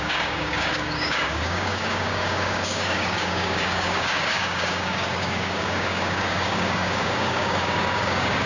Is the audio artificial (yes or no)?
yes